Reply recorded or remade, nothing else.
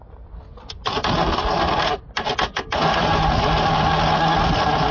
recorded